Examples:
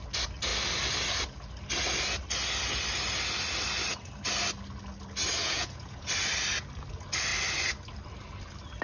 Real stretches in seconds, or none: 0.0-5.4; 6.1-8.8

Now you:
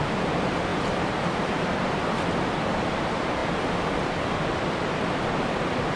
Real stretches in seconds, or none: 0.0-6.0

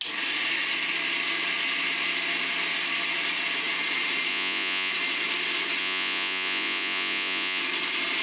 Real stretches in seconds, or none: 0.0-4.3; 4.9-5.8; 7.6-8.2

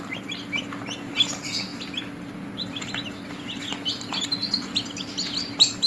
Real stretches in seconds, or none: 0.0-5.9

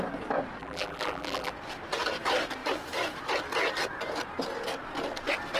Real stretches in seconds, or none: 0.0-0.6; 1.5-5.6